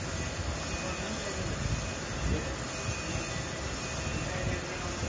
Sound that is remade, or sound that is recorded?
recorded